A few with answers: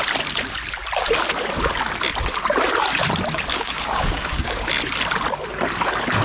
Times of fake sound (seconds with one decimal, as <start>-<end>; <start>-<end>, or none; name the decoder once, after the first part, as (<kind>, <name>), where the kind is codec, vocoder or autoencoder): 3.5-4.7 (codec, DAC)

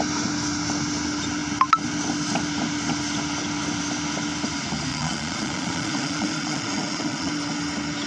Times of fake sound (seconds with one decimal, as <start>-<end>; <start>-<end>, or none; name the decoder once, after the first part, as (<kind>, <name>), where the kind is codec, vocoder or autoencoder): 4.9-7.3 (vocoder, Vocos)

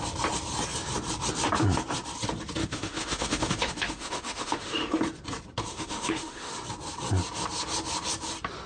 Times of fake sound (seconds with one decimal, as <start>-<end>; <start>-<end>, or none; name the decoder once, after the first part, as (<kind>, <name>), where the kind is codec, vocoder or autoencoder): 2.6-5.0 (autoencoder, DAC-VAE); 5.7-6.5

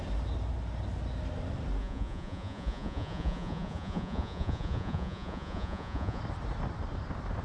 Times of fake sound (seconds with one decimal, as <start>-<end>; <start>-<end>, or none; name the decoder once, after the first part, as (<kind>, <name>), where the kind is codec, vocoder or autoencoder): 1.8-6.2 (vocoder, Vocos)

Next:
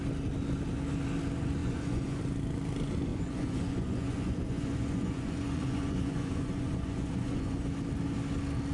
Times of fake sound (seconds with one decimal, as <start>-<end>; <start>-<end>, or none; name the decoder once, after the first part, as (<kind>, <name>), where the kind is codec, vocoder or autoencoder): 1.6-2.2 (vocoder, Vocos); 3.1-7.7